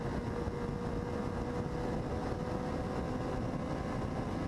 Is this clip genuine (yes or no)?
yes